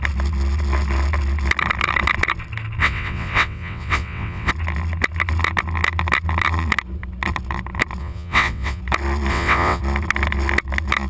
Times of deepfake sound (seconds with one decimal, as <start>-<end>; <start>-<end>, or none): 2.8-4.5; 8.0-8.8; 9.3-9.8